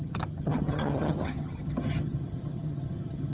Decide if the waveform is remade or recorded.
remade